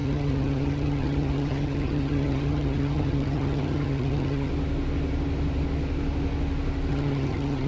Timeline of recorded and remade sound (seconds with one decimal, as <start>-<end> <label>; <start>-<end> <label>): 0.0-4.5 remade; 4.5-6.9 recorded; 6.9-7.7 remade